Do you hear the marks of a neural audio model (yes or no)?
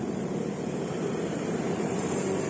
yes